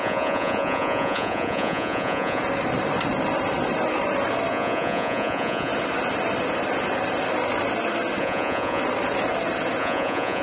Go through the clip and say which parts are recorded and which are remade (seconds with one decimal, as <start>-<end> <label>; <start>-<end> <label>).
0.0-2.4 remade; 2.4-4.5 recorded; 4.5-5.7 remade; 5.7-8.2 recorded; 8.2-8.8 remade; 8.8-9.8 recorded; 9.8-10.4 remade